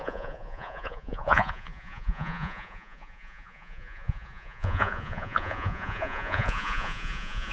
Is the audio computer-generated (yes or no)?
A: yes